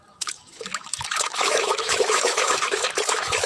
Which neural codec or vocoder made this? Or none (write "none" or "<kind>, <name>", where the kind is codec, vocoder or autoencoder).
autoencoder, DAC-VAE